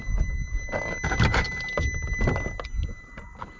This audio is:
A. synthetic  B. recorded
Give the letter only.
B